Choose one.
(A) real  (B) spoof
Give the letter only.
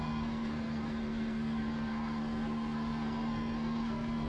B